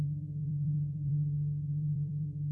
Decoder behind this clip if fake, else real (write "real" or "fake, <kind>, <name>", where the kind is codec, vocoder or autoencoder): fake, vocoder, BigVGAN v2